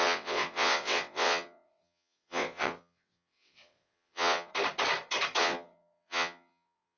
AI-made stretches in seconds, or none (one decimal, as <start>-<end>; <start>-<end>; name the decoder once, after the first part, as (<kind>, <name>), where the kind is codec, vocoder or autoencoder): 0.0-4.5 (vocoder, WaveNeXt); 5.4-7.0